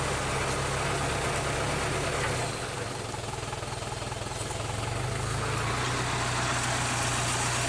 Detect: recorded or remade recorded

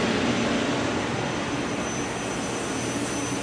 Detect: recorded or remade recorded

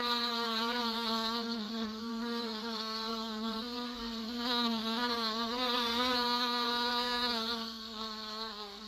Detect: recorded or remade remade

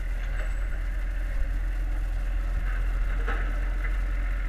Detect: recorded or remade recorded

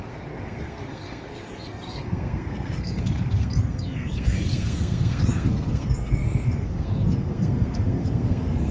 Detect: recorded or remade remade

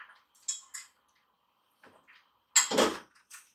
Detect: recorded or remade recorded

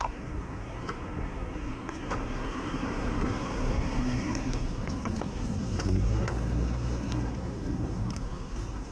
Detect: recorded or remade remade